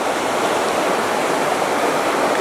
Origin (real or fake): real